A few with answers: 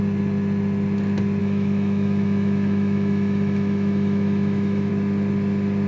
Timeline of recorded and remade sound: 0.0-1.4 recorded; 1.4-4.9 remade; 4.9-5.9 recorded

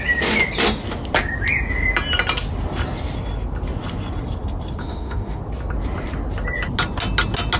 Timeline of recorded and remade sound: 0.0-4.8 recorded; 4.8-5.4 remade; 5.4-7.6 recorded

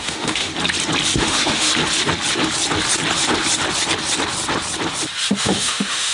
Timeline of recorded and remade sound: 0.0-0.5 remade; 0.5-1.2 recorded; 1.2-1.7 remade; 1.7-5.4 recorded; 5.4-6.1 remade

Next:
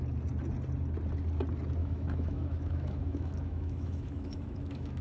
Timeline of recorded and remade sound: 0.0-1.8 recorded; 1.8-5.0 remade

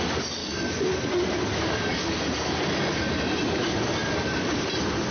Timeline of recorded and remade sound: 0.0-5.1 recorded